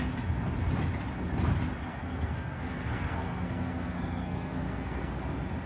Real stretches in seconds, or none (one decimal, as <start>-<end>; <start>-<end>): 0.0-1.9; 5.1-5.7